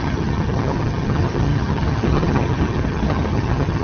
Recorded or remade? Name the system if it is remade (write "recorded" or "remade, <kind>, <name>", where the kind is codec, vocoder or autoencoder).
remade, vocoder, HiFi-GAN